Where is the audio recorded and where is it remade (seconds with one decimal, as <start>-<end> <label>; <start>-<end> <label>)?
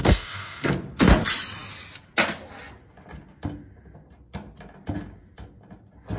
0.0-0.7 remade; 0.7-6.2 recorded